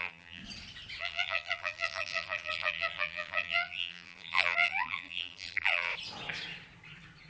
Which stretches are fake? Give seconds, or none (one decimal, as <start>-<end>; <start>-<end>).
0.0-0.4; 1.0-5.9